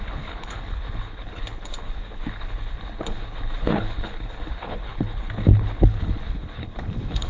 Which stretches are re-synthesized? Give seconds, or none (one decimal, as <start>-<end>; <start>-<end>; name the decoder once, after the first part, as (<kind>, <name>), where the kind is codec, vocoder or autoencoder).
0.0-7.3 (codec, HILCodec)